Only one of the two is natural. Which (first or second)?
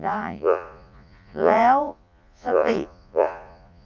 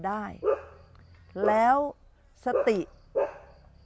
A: second